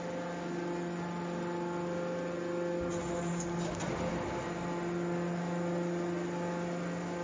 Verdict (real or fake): real